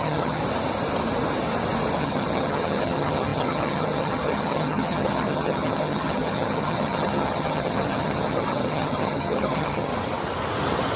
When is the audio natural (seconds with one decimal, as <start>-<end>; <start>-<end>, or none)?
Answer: 0.4-2.0; 9.9-11.0